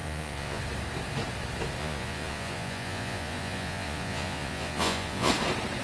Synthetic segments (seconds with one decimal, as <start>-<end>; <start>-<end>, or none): 0.0-0.6; 1.8-5.3